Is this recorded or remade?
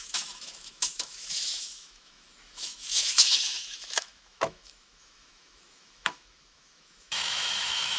remade